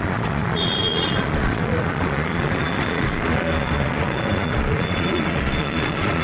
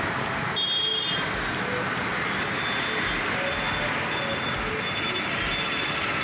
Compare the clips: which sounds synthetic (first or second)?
first